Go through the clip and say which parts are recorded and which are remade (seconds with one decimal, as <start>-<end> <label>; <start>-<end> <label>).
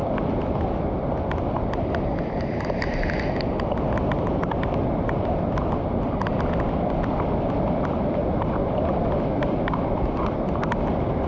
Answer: 0.0-11.3 recorded